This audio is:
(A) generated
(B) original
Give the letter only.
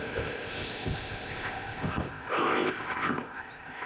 A